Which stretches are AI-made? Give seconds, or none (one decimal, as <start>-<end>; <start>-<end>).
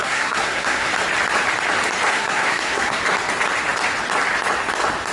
0.0-0.9; 2.1-3.0